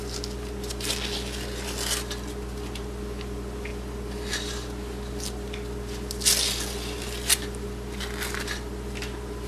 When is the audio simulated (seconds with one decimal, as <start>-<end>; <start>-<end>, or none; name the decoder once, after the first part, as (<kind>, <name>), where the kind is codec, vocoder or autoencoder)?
none